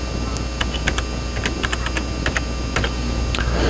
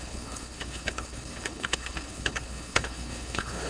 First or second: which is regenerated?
second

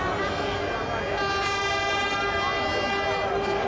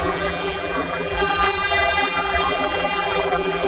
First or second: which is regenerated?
second